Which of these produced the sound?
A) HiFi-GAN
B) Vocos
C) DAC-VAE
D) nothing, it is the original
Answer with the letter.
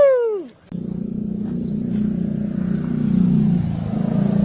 D